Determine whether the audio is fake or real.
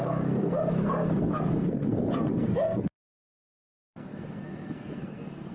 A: fake